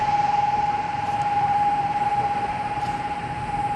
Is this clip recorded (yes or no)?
no